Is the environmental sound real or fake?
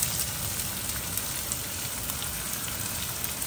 fake